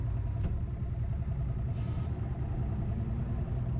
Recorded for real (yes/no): yes